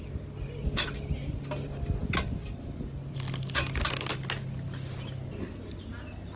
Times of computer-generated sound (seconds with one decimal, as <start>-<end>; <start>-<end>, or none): none